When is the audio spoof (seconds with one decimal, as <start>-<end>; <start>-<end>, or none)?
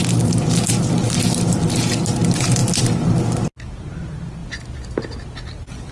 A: none